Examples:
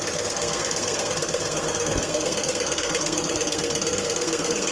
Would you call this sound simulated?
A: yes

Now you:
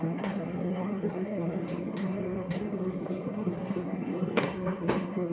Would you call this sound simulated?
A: yes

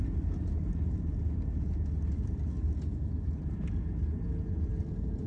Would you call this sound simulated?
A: no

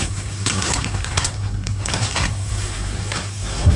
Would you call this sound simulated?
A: yes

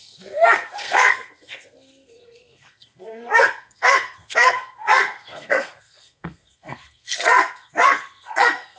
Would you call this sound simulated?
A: yes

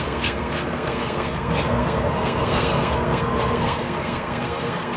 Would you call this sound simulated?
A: yes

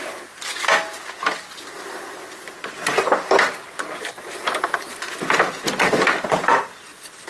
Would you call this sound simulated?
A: no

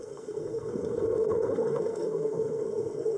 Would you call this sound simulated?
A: yes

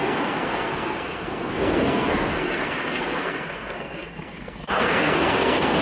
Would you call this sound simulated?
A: yes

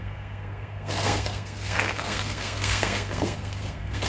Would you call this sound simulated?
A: yes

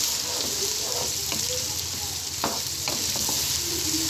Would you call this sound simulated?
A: no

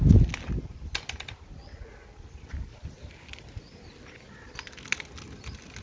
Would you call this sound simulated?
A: no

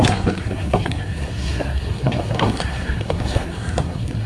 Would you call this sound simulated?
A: yes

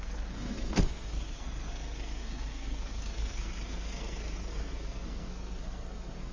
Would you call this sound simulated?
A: yes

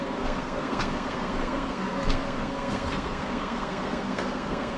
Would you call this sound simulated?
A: yes